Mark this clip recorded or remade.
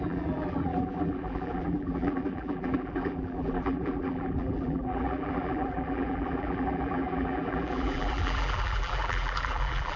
remade